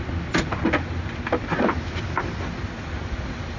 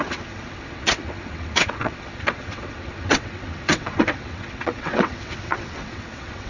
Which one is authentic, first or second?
first